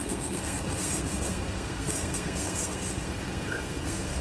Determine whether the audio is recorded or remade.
remade